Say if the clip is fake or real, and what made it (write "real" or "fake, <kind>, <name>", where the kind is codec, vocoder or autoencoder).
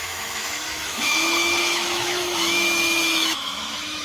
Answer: fake, autoencoder, DAC-VAE